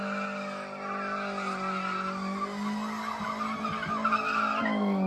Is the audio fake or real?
real